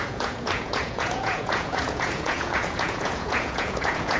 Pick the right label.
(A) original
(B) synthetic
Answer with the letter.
B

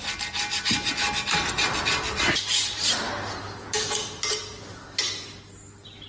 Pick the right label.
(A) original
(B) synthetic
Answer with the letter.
A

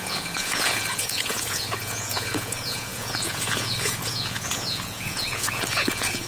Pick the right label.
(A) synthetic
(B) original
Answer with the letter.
A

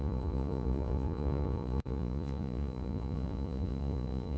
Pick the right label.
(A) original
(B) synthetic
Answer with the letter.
B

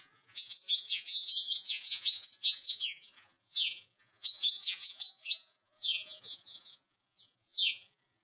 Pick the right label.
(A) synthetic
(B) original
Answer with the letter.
A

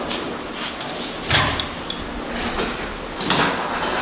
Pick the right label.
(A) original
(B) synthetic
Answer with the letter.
A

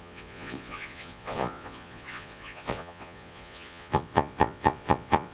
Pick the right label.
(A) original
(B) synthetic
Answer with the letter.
B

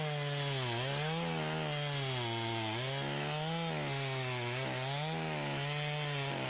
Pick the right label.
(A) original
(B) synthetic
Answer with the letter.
A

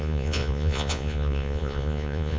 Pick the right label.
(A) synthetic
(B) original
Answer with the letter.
A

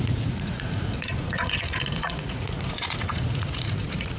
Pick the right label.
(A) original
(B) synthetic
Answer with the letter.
B